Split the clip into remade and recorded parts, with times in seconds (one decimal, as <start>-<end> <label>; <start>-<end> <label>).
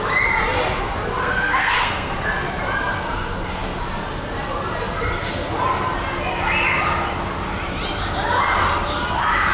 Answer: 0.0-1.2 recorded; 1.2-2.1 remade; 2.1-9.5 recorded